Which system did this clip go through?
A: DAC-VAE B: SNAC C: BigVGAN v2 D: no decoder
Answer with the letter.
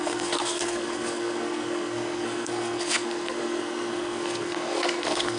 B